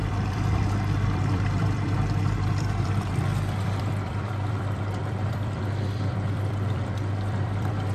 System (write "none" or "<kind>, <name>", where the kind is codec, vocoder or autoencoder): vocoder, BigVGAN v2